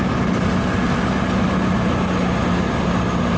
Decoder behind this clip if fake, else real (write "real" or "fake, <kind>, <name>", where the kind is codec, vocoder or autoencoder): real